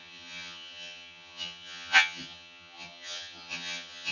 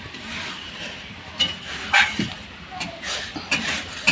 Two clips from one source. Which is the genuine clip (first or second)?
second